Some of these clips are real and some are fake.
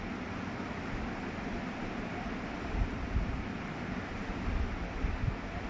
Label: real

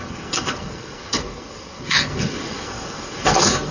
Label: fake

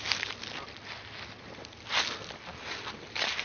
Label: real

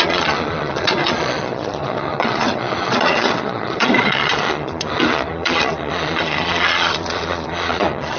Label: fake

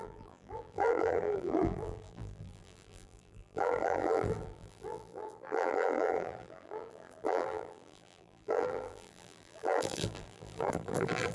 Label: fake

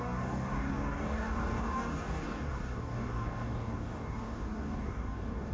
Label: fake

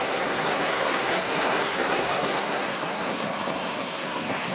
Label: fake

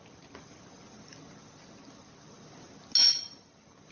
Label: real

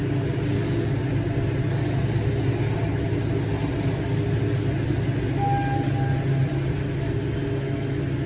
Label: real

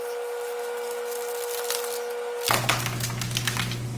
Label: real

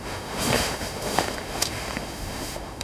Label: fake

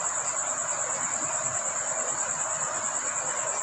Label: real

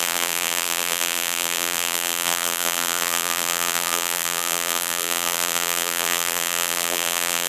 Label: fake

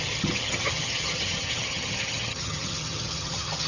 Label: fake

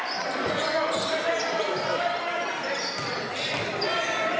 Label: real